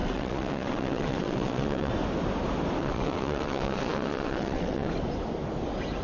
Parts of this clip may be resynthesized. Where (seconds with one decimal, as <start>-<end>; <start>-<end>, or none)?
0.0-1.9; 2.8-4.9

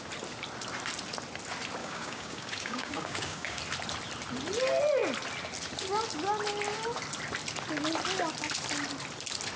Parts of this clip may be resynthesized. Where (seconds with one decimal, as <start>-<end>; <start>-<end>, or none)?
1.8-3.6

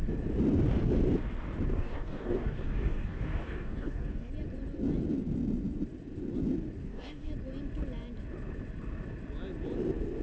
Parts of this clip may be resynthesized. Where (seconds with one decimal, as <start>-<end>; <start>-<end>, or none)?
1.7-4.3; 6.8-7.3

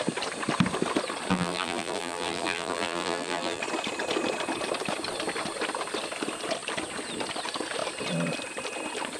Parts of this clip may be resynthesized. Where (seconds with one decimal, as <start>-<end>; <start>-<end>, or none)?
1.3-3.6

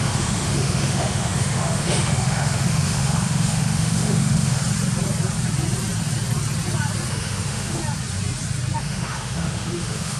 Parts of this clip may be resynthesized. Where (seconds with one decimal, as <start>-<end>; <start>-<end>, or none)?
0.0-4.6; 7.1-7.8; 8.8-10.2